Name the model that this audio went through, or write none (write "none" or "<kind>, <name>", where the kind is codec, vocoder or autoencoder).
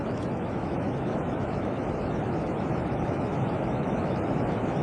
autoencoder, DAC-VAE